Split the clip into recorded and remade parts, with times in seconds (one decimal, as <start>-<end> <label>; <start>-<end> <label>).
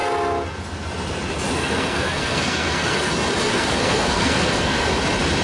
0.0-1.6 recorded; 1.6-3.1 remade; 3.1-3.5 recorded; 3.5-4.9 remade; 4.9-5.4 recorded